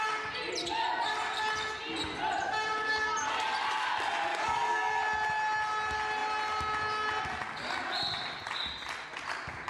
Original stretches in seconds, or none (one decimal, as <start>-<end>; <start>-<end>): 0.0-4.3; 5.0-9.7

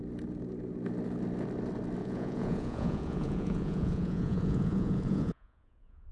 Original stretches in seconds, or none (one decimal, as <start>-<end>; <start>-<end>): 0.0-2.0

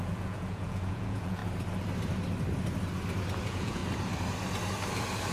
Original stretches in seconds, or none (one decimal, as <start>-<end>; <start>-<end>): 1.4-3.4; 3.8-5.3

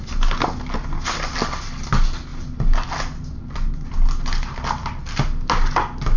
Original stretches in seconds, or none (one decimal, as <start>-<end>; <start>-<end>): 0.0-6.2

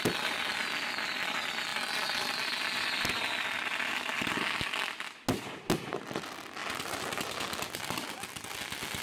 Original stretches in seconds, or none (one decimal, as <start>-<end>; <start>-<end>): 0.0-9.0

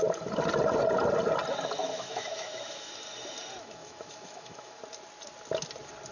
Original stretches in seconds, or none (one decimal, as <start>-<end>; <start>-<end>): 0.0-1.8; 2.9-3.6; 4.8-6.1

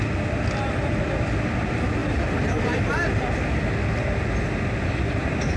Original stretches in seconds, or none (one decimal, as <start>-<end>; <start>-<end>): 0.0-5.6